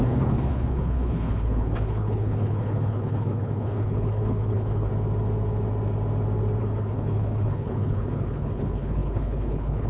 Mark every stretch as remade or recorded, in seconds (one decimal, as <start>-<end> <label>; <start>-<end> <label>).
0.0-4.9 remade; 4.9-6.6 recorded; 6.6-9.9 remade